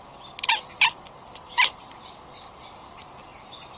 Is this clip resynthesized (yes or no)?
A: yes